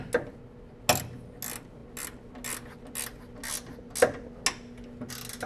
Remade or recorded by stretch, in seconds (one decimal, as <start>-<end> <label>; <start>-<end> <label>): 0.0-5.5 recorded